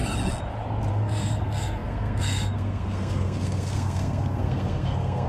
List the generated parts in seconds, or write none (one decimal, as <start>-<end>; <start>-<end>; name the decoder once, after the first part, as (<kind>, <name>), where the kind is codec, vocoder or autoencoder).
0.9-5.3 (codec, SNAC)